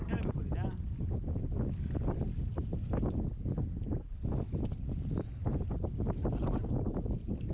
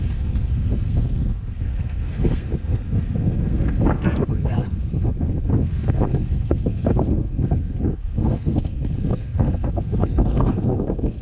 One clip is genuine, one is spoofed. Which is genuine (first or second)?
first